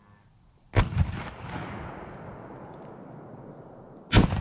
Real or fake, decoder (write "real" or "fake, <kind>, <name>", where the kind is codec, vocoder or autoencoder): real